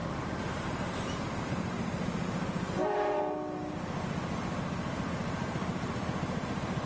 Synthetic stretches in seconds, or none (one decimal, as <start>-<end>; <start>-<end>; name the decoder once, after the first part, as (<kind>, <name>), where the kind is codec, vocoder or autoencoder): 0.0-3.2 (vocoder, BigVGAN v2); 5.4-6.0